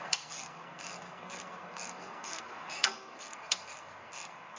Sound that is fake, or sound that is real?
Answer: fake